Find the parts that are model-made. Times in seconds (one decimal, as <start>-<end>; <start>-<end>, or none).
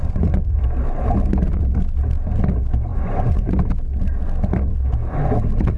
0.0-0.6; 2.9-3.5